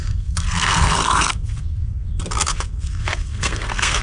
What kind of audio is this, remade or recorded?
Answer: remade